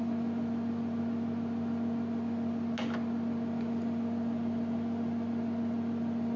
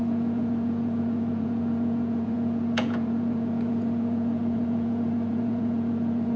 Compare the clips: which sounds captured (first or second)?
first